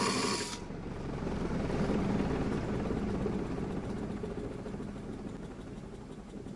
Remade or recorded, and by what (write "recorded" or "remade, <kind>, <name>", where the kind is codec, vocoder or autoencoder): recorded